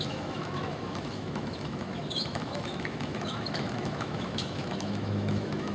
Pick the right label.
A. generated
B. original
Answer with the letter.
A